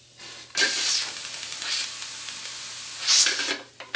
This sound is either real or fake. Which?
real